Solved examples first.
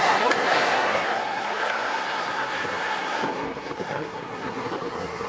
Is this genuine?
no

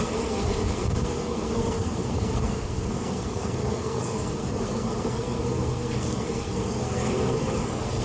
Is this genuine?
no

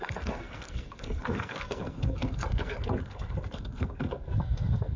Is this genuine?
no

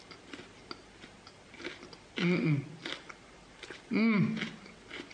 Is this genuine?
yes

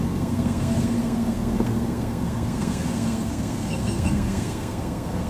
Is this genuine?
no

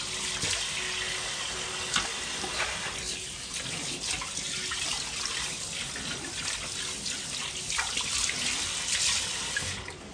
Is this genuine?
yes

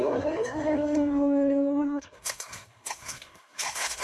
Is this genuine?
no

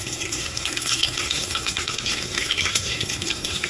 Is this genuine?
no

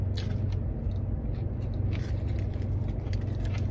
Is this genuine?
yes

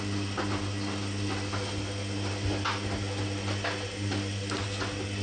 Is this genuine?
yes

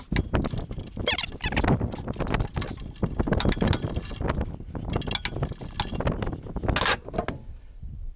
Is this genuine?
yes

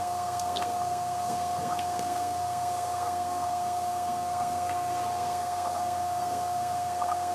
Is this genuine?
no